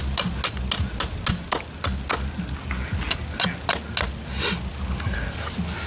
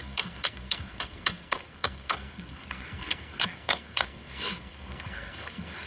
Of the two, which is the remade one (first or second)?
second